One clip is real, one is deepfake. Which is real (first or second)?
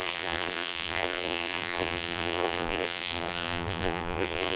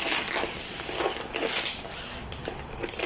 second